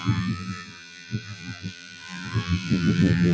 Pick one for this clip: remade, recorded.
remade